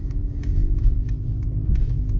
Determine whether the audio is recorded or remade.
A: remade